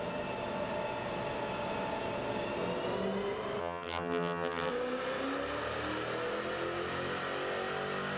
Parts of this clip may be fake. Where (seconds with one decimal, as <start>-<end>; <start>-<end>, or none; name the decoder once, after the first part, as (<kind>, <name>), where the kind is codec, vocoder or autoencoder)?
3.6-4.7 (vocoder, HiFi-GAN)